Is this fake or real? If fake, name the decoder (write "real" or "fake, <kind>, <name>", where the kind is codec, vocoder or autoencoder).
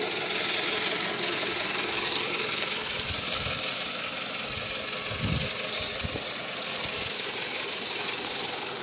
real